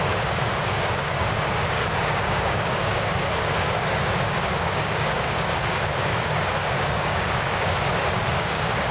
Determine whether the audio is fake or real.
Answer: fake